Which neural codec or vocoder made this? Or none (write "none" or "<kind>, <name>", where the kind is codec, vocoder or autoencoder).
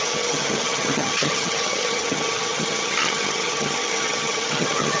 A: vocoder, HiFi-GAN